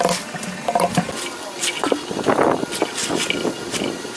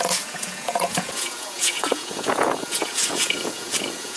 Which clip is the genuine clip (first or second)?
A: first